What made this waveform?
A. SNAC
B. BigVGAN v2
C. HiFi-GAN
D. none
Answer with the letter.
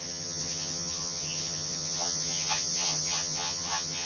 C